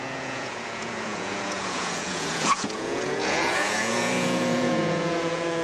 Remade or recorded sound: remade